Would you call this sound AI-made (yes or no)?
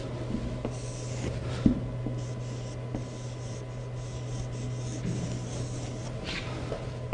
no